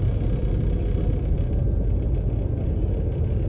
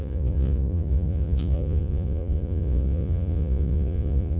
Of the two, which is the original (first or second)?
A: first